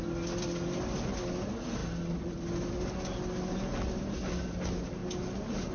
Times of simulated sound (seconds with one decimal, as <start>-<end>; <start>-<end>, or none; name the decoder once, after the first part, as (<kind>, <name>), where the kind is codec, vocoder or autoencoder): none